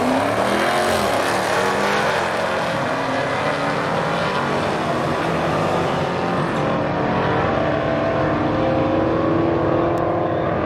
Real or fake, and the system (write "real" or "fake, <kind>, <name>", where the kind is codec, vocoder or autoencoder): real